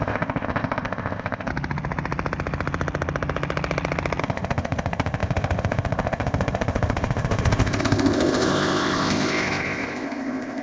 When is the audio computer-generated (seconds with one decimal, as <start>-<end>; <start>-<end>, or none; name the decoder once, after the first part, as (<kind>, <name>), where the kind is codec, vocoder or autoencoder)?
0.0-1.5 (codec, ZipCodec); 4.2-10.6